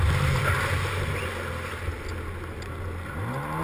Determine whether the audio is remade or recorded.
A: recorded